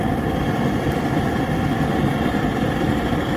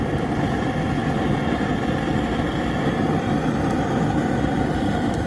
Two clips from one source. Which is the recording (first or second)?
second